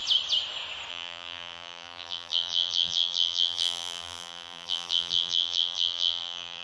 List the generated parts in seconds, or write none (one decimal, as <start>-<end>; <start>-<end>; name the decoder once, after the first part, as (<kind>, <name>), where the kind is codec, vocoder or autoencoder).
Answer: 0.9-6.6 (vocoder, BigVGAN v2)